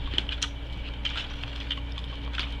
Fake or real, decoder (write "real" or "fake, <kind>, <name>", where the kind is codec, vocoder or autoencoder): real